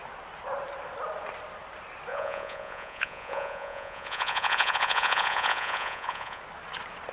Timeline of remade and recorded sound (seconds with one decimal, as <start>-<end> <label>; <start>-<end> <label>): 0.0-2.1 recorded; 2.1-6.4 remade; 6.4-7.1 recorded